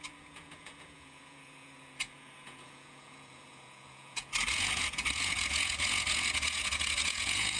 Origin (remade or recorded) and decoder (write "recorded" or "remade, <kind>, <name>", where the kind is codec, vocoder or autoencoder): remade, vocoder, Vocos